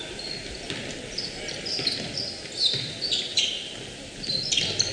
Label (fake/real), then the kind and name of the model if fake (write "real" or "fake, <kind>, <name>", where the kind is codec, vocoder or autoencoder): real